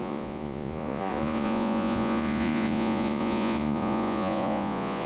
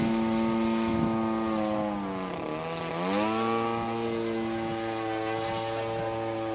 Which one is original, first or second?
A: second